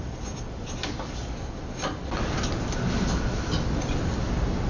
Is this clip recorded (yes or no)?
yes